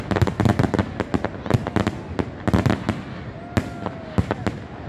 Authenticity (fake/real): real